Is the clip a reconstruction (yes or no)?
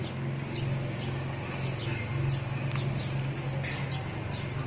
no